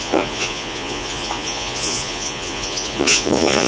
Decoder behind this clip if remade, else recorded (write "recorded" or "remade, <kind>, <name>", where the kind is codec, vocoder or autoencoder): remade, vocoder, Vocos